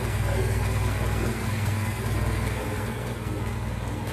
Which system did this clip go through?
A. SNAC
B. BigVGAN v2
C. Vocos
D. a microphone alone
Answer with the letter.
A